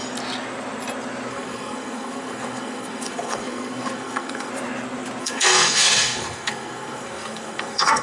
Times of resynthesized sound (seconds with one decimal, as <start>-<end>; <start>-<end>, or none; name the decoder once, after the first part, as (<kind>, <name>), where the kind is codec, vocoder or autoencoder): 1.3-4.5 (codec, SNAC); 5.2-8.0